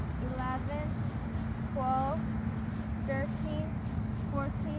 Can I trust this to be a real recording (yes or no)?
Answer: yes